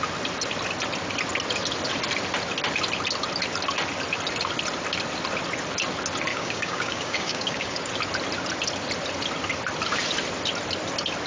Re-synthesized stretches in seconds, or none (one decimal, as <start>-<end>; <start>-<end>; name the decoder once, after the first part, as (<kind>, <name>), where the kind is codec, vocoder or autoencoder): 6.3-7.9 (codec, DAC)